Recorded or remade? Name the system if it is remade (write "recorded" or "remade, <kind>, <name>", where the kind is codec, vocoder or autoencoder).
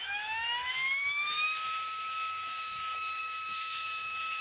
remade, autoencoder, DAC-VAE